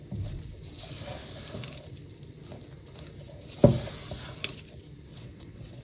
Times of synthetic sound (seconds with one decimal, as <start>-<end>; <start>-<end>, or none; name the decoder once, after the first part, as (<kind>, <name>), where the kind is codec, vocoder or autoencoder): 5.1-5.8 (vocoder, WaveNeXt)